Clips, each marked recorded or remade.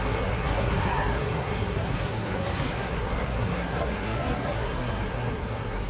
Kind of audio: remade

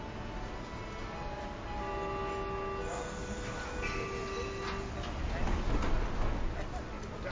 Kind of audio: recorded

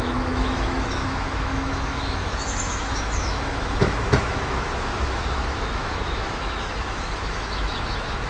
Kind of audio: remade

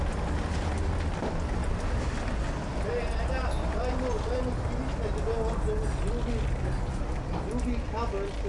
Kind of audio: recorded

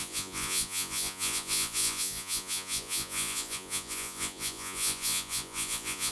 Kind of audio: remade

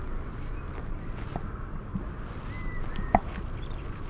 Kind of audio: recorded